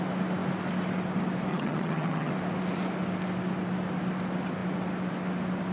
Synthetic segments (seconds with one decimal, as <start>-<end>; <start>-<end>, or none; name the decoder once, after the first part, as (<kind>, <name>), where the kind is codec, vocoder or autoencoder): 1.5-2.3 (vocoder, HiFi-GAN)